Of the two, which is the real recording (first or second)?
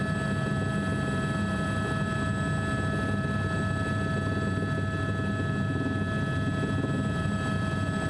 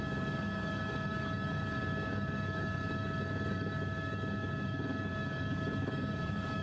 first